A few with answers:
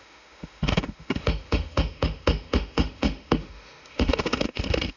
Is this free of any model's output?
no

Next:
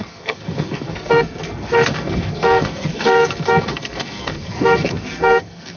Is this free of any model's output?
no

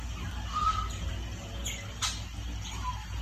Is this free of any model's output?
yes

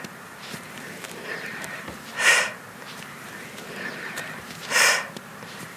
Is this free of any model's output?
no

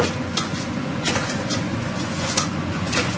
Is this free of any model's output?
no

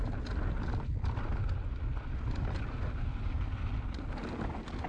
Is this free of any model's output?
yes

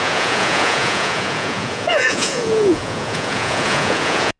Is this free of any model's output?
no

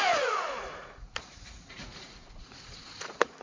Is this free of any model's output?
no